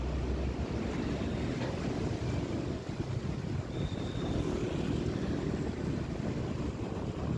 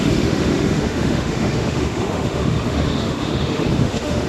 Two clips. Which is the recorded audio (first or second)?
first